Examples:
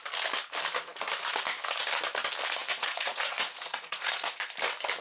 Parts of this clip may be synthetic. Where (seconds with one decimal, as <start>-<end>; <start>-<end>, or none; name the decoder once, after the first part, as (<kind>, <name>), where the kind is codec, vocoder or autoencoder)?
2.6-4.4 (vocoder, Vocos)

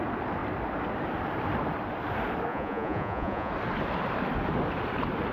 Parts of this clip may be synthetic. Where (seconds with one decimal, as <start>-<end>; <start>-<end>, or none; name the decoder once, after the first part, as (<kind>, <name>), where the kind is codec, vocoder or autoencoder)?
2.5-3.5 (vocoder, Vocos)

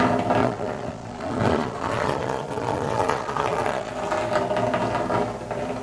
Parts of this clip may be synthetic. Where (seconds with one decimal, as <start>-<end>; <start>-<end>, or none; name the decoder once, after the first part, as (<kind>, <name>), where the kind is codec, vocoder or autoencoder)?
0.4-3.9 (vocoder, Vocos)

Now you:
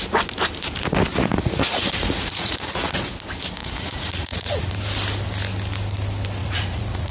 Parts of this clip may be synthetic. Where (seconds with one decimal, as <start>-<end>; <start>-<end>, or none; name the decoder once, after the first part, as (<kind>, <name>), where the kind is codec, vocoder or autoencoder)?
1.1-3.1 (vocoder, Vocos); 3.6-4.7; 6.4-7.1

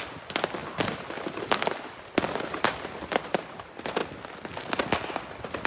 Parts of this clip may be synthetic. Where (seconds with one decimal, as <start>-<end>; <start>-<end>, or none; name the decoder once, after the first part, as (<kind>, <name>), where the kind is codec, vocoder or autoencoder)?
none

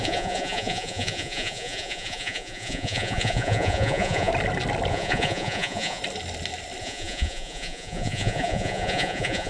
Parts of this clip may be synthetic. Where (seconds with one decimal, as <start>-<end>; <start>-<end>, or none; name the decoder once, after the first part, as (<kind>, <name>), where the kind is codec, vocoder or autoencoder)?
0.0-4.3 (vocoder, Vocos); 4.9-6.0; 6.8-9.5

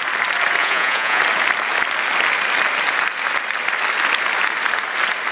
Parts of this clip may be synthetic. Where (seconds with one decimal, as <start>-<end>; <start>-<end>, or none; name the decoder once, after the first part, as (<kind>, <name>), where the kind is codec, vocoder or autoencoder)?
0.6-1.2 (vocoder, Vocos)